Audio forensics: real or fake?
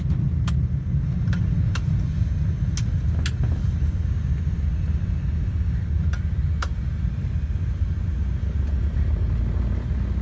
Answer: real